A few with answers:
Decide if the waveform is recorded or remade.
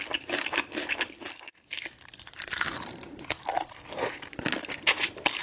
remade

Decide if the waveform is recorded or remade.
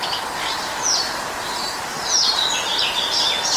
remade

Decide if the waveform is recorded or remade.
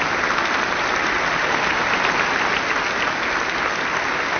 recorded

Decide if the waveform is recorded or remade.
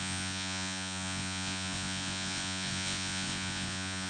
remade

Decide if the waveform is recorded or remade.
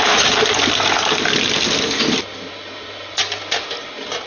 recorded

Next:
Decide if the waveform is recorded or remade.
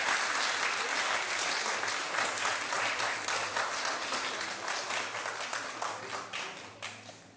recorded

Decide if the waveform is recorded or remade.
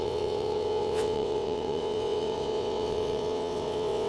remade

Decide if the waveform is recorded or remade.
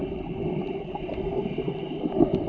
recorded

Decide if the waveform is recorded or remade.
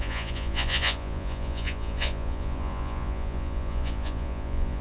remade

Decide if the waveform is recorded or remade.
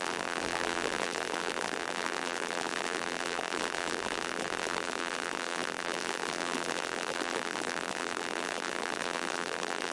remade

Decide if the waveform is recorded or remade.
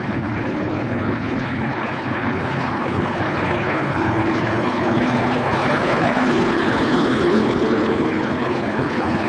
remade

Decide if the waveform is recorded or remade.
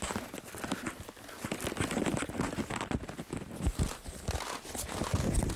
recorded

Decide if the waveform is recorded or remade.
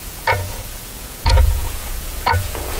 remade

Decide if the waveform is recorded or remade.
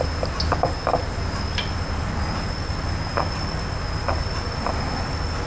recorded